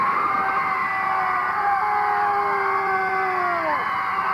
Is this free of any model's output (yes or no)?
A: yes